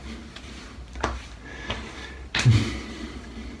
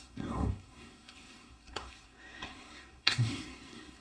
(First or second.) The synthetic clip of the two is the second